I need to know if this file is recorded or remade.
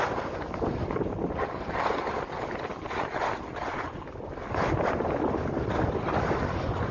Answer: recorded